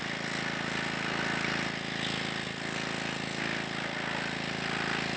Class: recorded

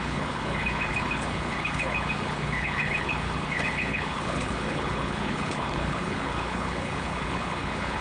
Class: remade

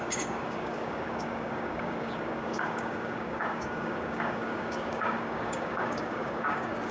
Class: remade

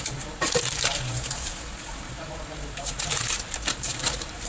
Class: remade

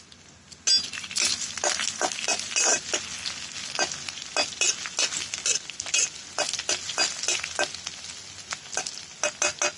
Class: recorded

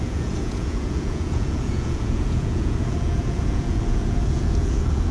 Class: remade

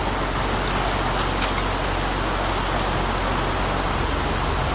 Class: recorded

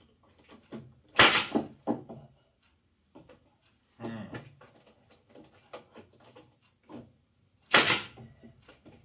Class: recorded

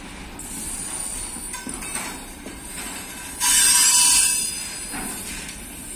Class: recorded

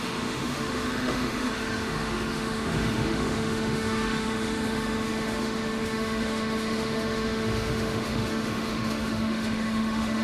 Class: remade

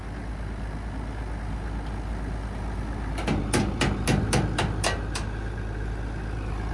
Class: recorded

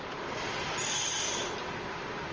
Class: recorded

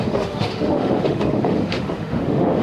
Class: remade